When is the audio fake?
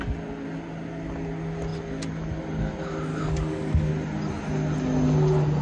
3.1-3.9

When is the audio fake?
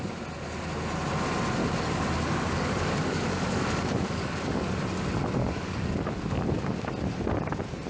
1.6-4.7; 5.4-6.9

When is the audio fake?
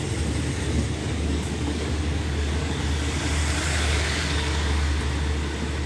1.0-2.8; 3.4-5.0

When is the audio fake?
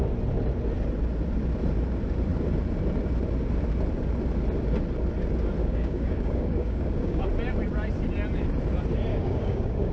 5.6-7.3; 9.1-9.9